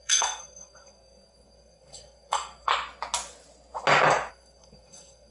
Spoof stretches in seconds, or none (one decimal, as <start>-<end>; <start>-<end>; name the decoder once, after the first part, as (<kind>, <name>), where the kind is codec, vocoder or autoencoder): 0.0-2.7 (codec, SNAC); 4.3-5.3